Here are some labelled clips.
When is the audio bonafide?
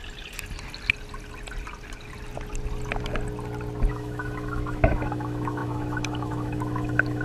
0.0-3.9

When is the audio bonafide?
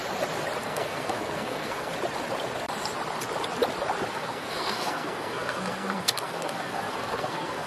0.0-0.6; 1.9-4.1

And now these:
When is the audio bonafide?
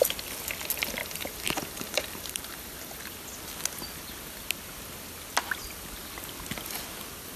0.0-1.0; 2.9-7.4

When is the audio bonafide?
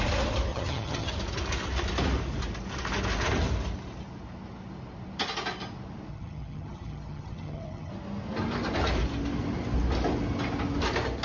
0.0-0.5; 1.1-6.1; 7.9-11.2